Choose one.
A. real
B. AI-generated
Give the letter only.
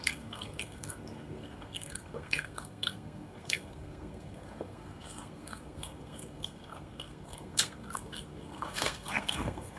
B